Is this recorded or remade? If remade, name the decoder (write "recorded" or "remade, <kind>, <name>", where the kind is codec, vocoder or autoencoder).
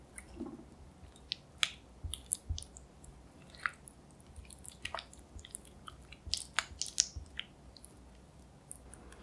recorded